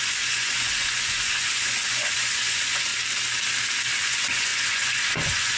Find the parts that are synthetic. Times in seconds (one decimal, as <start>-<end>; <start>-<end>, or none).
0.0-2.9; 4.0-5.6